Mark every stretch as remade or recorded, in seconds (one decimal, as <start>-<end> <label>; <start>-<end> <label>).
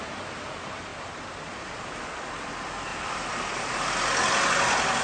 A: 0.0-2.9 recorded; 2.9-3.7 remade; 3.7-5.0 recorded